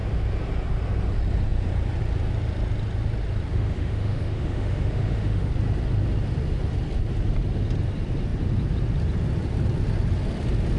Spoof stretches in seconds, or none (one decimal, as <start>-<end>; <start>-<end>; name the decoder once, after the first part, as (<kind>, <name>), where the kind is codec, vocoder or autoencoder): 3.5-5.5 (autoencoder, DAC-VAE)